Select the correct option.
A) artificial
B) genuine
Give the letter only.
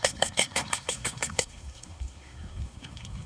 A